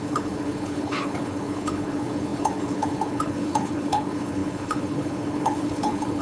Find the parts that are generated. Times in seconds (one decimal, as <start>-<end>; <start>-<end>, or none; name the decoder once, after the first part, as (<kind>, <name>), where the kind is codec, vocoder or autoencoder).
0.0-6.2 (codec, HILCodec)